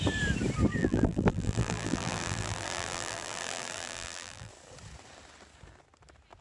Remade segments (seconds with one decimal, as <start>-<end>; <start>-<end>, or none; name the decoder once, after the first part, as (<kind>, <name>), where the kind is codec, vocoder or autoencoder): 0.8-4.5 (vocoder, BigVGAN v2)